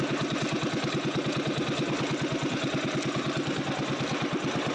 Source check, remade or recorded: recorded